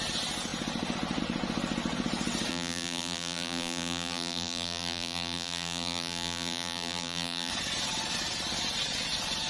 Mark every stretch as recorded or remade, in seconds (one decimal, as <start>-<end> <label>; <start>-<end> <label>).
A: 0.0-2.5 recorded; 2.5-7.5 remade; 7.5-9.5 recorded

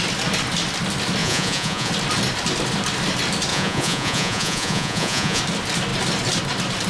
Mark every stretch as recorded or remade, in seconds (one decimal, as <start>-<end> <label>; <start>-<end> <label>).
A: 0.0-1.2 recorded; 1.2-1.9 remade; 1.9-3.5 recorded; 3.5-5.4 remade; 5.4-6.9 recorded

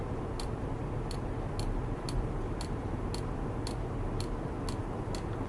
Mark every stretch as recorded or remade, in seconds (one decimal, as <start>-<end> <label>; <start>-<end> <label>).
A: 0.0-5.5 recorded

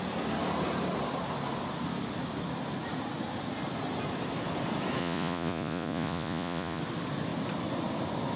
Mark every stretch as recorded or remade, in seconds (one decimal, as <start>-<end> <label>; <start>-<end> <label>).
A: 0.0-5.0 recorded; 5.0-6.8 remade; 6.8-8.4 recorded